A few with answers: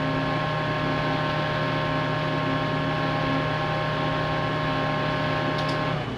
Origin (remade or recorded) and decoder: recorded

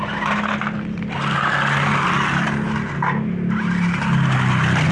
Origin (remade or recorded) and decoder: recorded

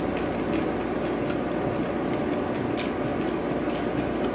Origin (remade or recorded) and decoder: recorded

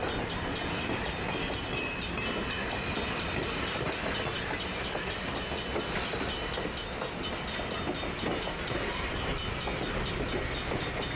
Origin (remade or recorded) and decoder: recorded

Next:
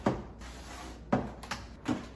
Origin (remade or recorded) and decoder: recorded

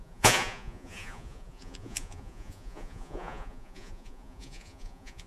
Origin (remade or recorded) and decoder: remade, vocoder, Vocos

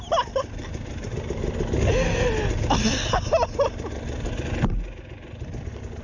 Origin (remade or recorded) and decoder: recorded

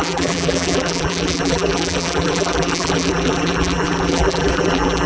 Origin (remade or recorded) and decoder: remade, vocoder, BigVGAN v2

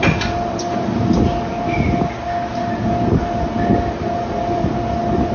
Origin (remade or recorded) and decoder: recorded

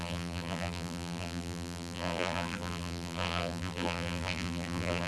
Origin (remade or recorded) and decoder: remade, vocoder, BigVGAN v2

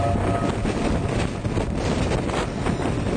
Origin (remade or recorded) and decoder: recorded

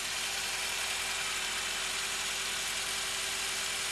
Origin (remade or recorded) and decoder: recorded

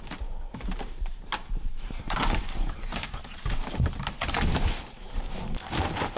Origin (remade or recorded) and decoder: remade, vocoder, BigVGAN v2